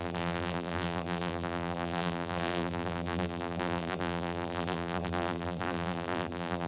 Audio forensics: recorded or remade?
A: remade